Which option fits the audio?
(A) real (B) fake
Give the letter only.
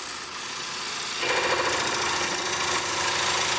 A